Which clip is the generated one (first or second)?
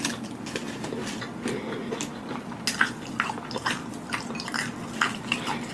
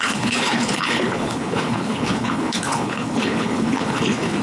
second